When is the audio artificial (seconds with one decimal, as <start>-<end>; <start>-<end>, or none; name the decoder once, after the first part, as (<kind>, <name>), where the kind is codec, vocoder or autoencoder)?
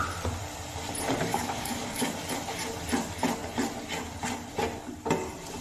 1.3-2.1 (codec, DAC)